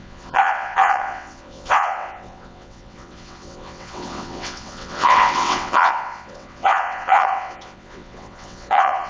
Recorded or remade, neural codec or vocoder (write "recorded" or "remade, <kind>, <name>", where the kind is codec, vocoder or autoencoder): remade, vocoder, WaveNeXt